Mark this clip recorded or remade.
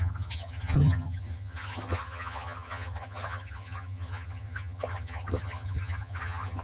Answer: remade